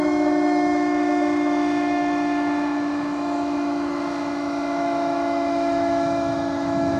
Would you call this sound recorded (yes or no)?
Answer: no